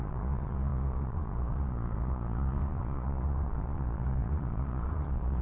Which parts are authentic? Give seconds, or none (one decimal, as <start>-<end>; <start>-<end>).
none